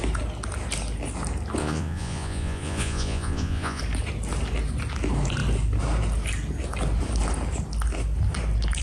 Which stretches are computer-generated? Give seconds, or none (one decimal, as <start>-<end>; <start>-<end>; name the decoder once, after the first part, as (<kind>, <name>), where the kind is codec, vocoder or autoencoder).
1.6-3.8 (vocoder, Vocos)